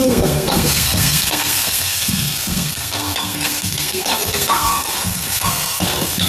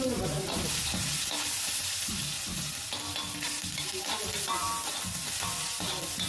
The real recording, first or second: second